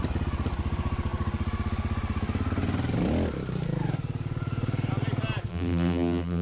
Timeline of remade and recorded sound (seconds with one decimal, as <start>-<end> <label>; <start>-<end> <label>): 0.0-5.5 recorded; 5.5-6.4 remade